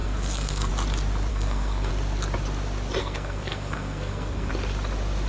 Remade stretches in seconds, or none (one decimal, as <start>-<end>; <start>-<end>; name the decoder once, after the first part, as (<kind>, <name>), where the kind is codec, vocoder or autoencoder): 0.0-0.7 (codec, SNAC); 1.3-1.9; 3.0-4.5